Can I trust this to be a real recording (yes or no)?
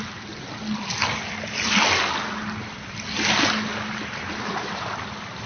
yes